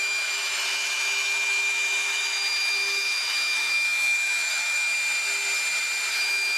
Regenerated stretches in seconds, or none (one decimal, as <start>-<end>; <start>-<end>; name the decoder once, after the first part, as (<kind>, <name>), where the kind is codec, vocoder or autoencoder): 0.0-4.9 (autoencoder, DAC-VAE); 6.1-6.6